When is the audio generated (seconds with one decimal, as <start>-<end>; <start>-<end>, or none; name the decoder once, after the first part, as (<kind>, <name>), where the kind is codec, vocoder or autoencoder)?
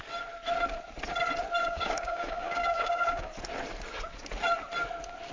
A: 1.6-3.3 (codec, DAC)